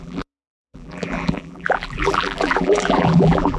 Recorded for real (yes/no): no